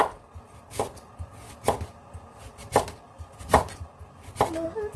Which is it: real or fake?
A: real